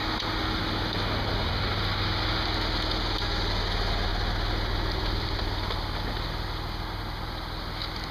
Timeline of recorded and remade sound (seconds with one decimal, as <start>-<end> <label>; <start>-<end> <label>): 0.0-4.1 recorded; 4.1-5.4 remade; 5.4-8.1 recorded